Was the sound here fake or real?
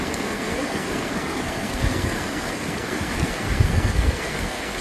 fake